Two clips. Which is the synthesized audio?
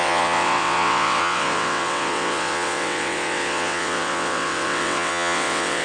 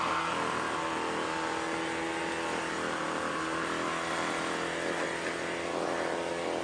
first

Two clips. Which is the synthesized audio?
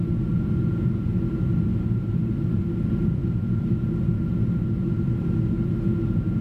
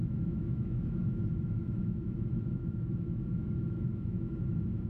second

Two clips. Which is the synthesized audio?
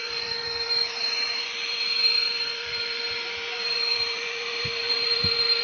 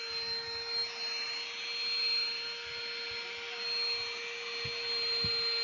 first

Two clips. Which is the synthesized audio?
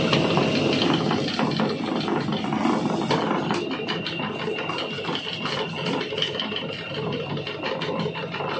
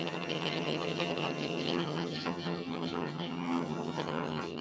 second